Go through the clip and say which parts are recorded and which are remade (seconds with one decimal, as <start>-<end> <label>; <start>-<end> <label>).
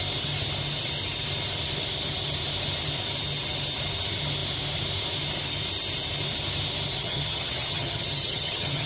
0.0-7.0 recorded; 7.0-8.9 remade